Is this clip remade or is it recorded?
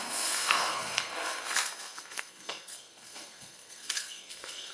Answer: remade